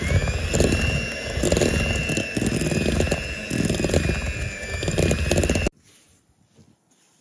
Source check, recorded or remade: recorded